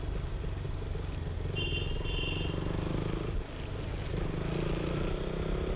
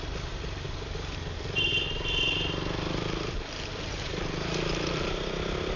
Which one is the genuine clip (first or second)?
first